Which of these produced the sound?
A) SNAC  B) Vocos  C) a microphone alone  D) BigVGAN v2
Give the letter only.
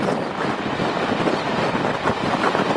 C